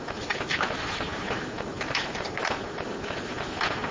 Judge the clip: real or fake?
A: real